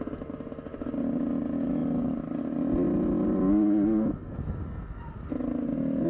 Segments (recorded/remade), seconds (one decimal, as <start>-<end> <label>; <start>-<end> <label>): 0.0-6.1 recorded